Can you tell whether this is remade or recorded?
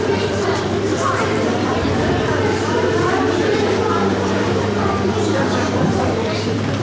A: remade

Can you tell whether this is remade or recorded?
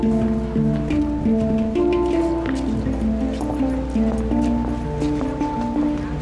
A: recorded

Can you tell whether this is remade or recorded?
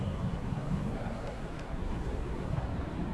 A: remade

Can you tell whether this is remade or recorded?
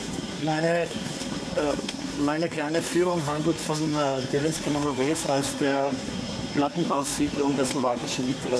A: remade